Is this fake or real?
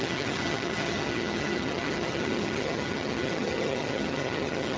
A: fake